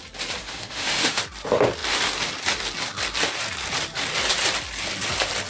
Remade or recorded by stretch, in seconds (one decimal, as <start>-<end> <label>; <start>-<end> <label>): 0.0-0.4 recorded; 0.4-1.2 remade; 1.2-5.5 recorded